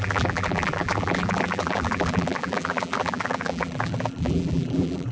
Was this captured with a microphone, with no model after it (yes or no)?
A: no